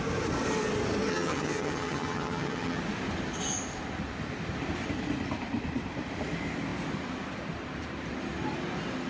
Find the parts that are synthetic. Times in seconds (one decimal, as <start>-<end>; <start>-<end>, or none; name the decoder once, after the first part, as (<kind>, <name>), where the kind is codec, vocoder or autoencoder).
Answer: 1.1-2.8 (vocoder, HiFi-GAN)